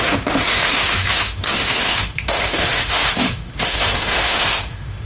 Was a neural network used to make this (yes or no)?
yes